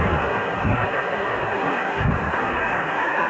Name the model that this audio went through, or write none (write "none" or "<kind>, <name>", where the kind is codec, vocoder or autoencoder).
codec, SNAC